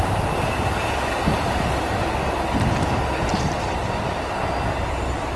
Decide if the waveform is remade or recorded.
recorded